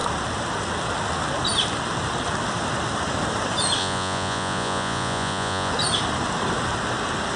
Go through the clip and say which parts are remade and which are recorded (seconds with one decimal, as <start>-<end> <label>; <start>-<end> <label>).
0.0-3.8 recorded; 3.8-5.7 remade; 5.7-7.4 recorded

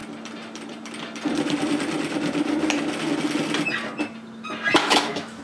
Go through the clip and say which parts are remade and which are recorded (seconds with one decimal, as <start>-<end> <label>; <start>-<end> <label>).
0.0-4.8 recorded; 4.8-5.4 remade

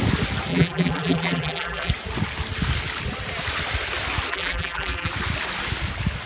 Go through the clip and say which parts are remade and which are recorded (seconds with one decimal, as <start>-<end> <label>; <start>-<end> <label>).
0.0-0.5 recorded; 0.5-1.9 remade; 1.9-4.3 recorded; 4.3-5.1 remade; 5.1-6.3 recorded

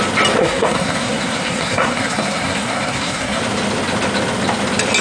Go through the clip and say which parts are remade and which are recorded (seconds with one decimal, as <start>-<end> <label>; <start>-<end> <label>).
0.0-0.4 recorded; 0.4-3.4 remade; 3.4-5.0 recorded

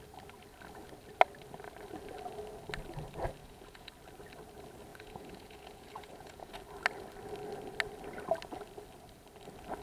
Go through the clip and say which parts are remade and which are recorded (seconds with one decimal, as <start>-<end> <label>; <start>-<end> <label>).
0.0-3.4 recorded; 3.4-3.9 remade; 3.9-4.9 recorded; 4.9-6.5 remade; 6.5-9.8 recorded

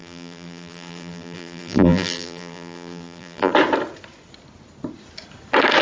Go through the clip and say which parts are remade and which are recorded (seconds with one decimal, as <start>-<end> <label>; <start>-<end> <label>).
0.0-3.5 remade; 3.5-5.8 recorded

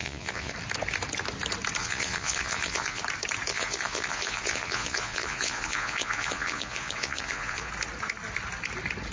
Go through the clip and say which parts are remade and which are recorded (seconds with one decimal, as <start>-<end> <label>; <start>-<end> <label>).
0.0-0.5 remade; 0.5-1.8 recorded; 1.8-3.0 remade; 3.0-3.5 recorded; 3.5-7.7 remade; 7.7-9.1 recorded

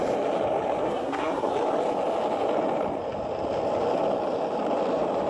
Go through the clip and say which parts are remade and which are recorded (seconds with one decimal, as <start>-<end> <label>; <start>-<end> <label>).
0.0-0.8 recorded; 0.8-1.5 remade; 1.5-5.3 recorded